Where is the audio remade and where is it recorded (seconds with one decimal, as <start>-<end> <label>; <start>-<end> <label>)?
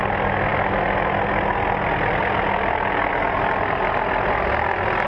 0.0-5.1 recorded